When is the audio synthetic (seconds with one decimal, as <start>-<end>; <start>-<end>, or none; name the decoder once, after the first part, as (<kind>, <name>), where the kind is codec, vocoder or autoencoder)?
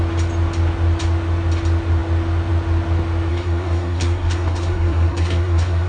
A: 3.3-5.9 (codec, SNAC)